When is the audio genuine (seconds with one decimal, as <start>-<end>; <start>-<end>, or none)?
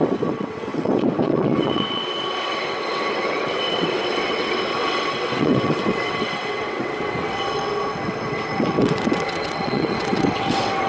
none